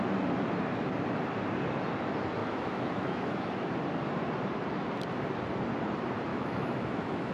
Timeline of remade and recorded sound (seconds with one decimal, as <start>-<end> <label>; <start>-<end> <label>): 0.0-2.4 recorded; 2.4-3.7 remade; 3.7-6.3 recorded; 6.3-7.3 remade